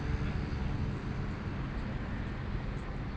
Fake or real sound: real